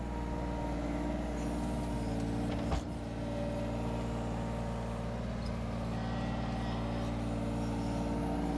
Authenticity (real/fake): real